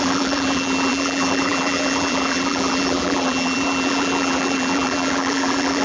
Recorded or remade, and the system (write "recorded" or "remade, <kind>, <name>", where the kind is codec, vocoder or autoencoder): remade, vocoder, BigVGAN v2